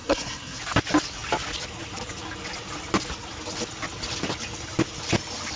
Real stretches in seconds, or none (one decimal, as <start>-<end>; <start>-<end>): 0.6-5.6